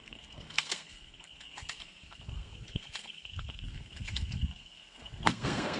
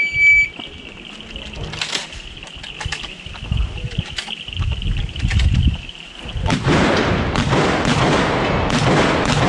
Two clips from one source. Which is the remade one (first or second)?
first